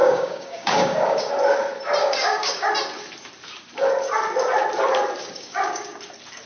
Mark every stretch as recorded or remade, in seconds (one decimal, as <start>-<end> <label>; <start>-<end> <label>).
0.0-1.3 remade; 1.3-2.0 recorded; 2.0-2.7 remade; 2.7-5.2 recorded; 5.2-6.0 remade; 6.0-6.5 recorded